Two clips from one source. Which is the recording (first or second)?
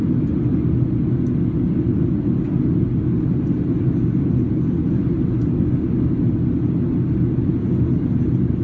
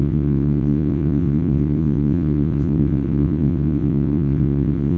first